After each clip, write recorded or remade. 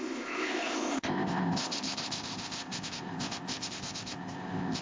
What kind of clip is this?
remade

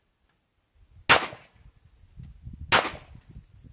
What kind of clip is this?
recorded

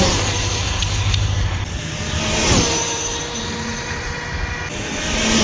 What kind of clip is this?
recorded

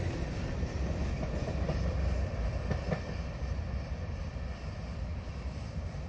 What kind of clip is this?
recorded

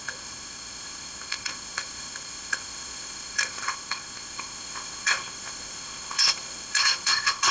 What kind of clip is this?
remade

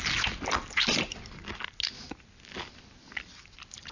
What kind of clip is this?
recorded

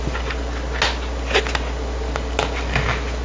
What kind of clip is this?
recorded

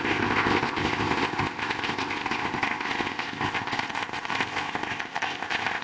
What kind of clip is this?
remade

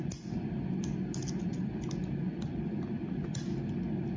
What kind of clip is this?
recorded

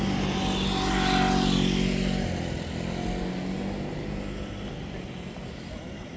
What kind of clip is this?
recorded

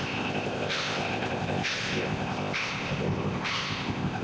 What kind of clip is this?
remade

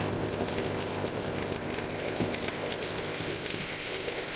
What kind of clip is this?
remade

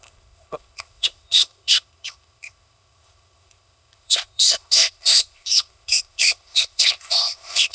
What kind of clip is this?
remade